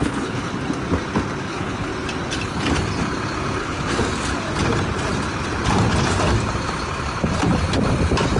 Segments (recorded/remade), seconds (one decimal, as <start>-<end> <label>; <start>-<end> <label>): 0.0-0.5 remade; 0.5-1.5 recorded; 1.5-1.9 remade; 1.9-3.6 recorded; 3.6-4.0 remade; 4.0-8.4 recorded